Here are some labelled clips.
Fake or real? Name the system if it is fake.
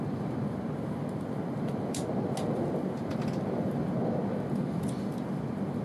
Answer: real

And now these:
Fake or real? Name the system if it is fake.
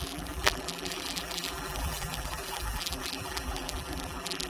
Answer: fake, vocoder, BigVGAN v2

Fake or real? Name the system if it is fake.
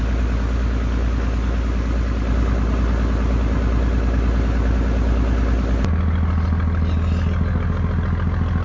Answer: real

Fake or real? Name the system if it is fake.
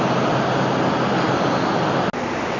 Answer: real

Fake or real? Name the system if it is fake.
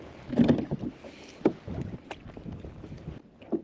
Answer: real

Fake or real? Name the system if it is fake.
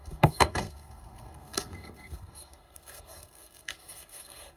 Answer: fake, codec, SNAC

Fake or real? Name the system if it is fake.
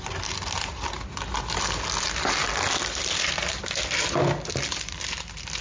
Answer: real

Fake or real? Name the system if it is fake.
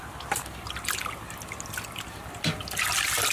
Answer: real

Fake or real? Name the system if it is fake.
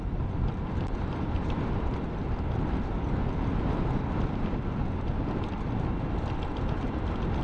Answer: real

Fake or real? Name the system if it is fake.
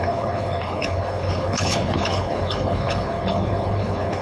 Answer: fake, codec, HILCodec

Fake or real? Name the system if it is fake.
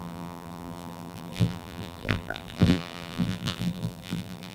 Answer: fake, vocoder, BigVGAN v2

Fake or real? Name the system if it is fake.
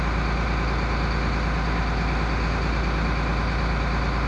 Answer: real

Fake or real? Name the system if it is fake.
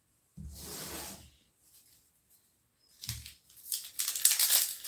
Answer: real